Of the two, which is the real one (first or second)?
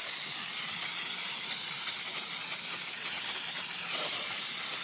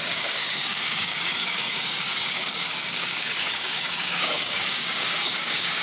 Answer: first